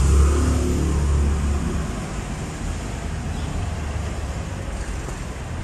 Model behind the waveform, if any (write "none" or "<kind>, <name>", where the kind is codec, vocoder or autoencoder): none